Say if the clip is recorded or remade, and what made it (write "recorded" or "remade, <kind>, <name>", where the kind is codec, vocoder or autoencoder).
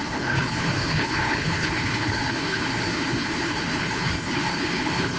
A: remade, codec, HILCodec